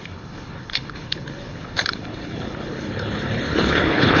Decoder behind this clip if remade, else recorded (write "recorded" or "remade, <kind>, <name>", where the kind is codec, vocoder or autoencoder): remade, codec, HILCodec